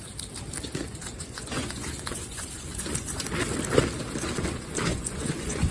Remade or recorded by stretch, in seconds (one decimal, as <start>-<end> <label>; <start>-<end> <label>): 0.0-1.0 recorded; 1.0-3.3 remade; 3.3-4.9 recorded; 4.9-5.7 remade